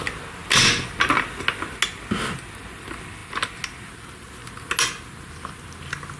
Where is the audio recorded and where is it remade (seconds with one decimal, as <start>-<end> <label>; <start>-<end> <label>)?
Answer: 0.0-6.2 recorded